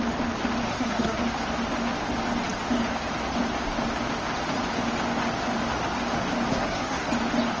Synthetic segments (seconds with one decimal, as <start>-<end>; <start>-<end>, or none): 0.7-1.2; 6.5-7.1